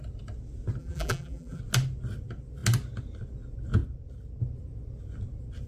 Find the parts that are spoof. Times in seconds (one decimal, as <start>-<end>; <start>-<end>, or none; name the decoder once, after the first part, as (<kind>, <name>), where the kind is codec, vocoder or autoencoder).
0.8-1.6 (vocoder, BigVGAN v2)